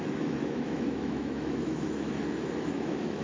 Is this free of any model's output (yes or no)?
no